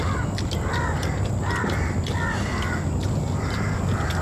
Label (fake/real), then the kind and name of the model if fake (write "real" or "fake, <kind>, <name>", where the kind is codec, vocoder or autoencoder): real